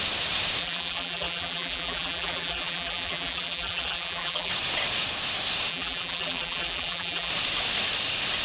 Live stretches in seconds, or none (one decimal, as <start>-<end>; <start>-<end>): 0.0-0.6; 4.5-5.7; 7.3-8.4